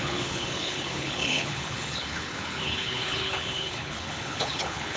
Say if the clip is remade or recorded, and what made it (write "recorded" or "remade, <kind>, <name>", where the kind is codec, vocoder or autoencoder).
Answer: remade, codec, HILCodec